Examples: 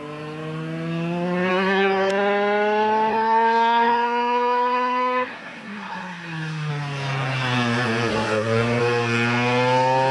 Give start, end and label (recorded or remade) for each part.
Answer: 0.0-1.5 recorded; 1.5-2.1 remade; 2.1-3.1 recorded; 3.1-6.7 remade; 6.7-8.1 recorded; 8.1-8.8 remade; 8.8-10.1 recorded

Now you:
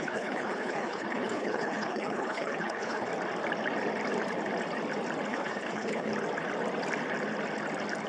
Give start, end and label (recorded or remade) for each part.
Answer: 0.0-3.1 remade; 3.1-5.3 recorded; 5.3-6.1 remade; 6.1-8.1 recorded

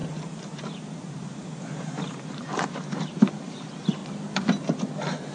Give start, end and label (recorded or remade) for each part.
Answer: 0.0-1.2 recorded; 1.2-4.0 remade; 4.0-5.3 recorded

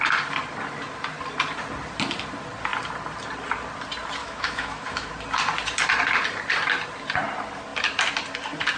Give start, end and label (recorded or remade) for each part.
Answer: 0.0-4.2 recorded; 4.2-5.1 remade; 5.1-8.8 recorded